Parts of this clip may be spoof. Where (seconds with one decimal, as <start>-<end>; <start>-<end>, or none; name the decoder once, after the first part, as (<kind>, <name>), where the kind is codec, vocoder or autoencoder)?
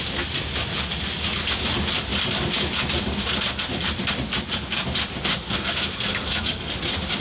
5.3-6.7 (codec, SNAC)